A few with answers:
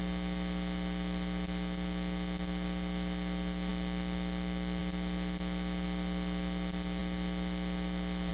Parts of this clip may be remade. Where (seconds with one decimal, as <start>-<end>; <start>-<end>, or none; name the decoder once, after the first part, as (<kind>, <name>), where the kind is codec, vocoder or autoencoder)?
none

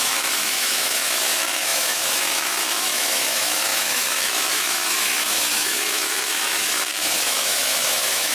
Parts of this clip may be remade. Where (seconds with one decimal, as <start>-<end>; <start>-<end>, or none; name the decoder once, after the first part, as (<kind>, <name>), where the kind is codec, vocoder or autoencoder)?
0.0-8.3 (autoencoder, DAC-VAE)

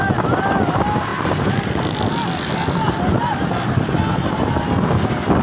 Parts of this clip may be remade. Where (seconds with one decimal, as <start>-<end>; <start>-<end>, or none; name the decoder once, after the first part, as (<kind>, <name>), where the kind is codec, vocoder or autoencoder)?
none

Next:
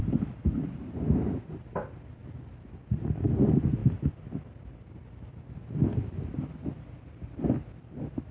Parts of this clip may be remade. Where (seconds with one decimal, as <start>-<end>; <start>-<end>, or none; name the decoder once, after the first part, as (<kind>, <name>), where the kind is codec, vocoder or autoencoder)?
0.0-2.2 (vocoder, BigVGAN v2); 2.8-3.8; 7.7-8.3

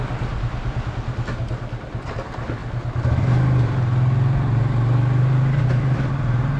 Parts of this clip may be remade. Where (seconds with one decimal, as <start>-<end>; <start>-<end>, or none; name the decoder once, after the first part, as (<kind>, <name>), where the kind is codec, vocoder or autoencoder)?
none

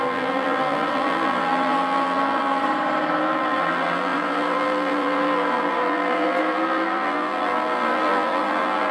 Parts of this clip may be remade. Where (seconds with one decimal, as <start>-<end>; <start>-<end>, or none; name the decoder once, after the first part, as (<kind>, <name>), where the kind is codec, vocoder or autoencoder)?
0.0-2.6 (vocoder, BigVGAN v2); 3.2-8.9

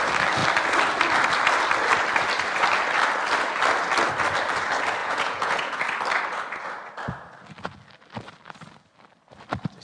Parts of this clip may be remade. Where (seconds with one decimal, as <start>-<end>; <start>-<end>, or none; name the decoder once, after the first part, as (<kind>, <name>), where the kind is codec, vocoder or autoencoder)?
5.0-5.8 (vocoder, Vocos)

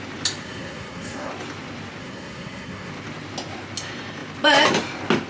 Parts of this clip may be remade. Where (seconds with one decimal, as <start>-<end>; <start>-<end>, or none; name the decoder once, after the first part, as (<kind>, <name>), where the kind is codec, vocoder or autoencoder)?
0.4-1.3 (codec, SNAC); 2.0-2.9